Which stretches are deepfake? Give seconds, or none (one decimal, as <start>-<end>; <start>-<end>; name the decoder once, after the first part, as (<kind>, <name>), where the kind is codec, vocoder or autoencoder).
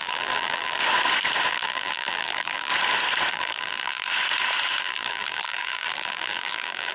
0.0-0.8 (vocoder, BigVGAN v2); 1.5-2.7; 3.3-4.1; 4.8-6.9